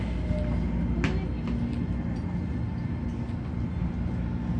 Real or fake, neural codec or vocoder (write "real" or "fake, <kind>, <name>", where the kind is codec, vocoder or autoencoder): real